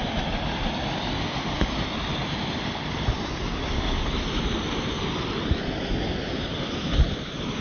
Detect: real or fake real